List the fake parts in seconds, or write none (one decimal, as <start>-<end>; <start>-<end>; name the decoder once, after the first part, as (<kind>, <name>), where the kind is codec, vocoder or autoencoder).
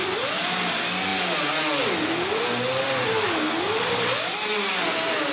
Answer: none